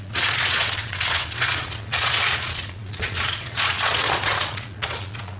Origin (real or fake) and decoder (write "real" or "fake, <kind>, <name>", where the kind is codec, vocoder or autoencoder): fake, vocoder, Vocos